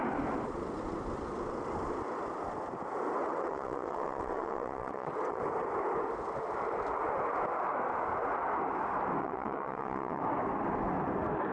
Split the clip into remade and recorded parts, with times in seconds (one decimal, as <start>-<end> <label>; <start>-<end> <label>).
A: 0.0-3.2 recorded; 3.2-5.4 remade; 5.4-9.2 recorded; 9.2-10.2 remade; 10.2-11.5 recorded